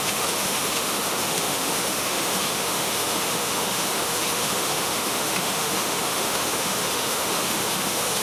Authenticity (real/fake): fake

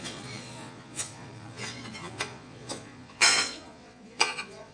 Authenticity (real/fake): fake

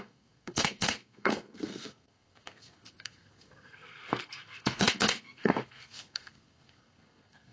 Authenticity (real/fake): fake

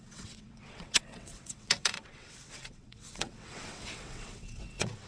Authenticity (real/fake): fake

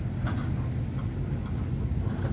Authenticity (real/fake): real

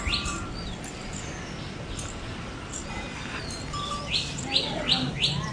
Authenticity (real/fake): real